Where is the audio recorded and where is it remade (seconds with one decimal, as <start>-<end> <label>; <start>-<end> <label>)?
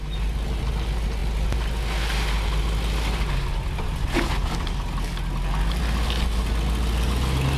0.0-7.6 recorded